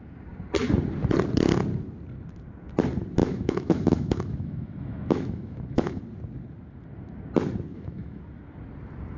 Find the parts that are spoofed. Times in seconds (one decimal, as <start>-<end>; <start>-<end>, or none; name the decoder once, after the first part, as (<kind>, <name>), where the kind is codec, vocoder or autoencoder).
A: 3.2-6.0 (autoencoder, DAC-VAE); 7.7-8.2